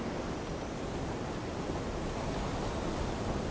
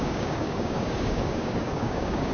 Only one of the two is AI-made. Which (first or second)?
second